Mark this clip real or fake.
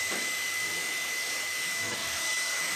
fake